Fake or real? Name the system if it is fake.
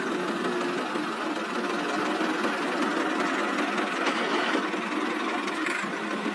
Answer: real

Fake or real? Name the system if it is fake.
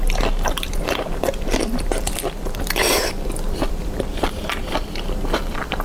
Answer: fake, vocoder, BigVGAN v2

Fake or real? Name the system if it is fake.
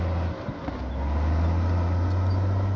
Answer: real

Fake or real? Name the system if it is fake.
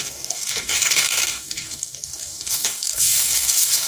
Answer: fake, codec, DAC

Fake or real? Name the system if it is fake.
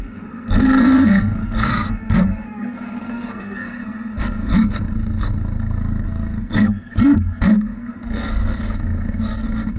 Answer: fake, codec, SNAC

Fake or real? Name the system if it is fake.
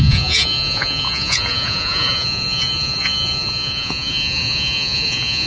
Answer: fake, vocoder, Vocos